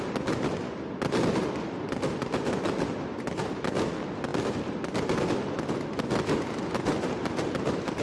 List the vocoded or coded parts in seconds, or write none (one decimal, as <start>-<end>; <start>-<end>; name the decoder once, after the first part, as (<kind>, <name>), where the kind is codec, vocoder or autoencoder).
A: none